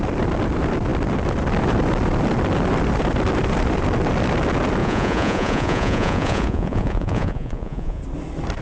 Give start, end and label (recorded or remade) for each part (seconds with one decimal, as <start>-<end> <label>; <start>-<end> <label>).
0.0-4.8 recorded; 4.8-8.0 remade; 8.0-8.6 recorded